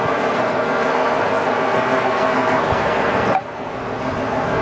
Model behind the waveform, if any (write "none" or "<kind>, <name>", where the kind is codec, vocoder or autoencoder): codec, SNAC